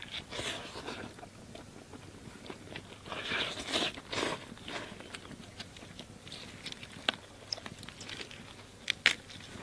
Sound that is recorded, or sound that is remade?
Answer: recorded